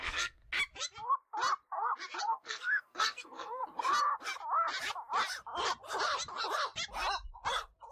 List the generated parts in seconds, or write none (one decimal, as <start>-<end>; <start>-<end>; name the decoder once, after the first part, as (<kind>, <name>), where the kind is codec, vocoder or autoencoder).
0.0-0.4 (codec, SNAC); 2.2-3.6